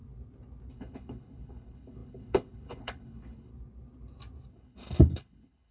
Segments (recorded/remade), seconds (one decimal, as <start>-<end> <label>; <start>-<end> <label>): 0.0-0.7 recorded; 0.7-3.5 remade; 3.5-4.5 recorded; 4.5-5.7 remade